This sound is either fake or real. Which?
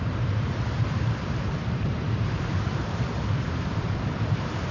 fake